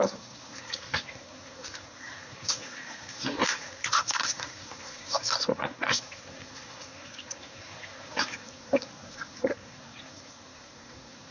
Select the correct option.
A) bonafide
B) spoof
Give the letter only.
B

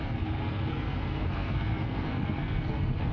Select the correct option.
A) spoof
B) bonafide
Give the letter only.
A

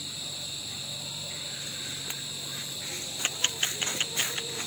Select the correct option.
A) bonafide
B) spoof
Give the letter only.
A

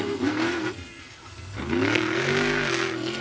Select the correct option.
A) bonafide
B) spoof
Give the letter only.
B